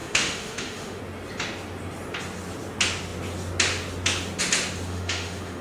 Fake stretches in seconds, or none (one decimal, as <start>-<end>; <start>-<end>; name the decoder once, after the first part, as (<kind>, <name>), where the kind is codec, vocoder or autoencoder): 0.0-1.0 (autoencoder, DAC-VAE); 4.9-5.6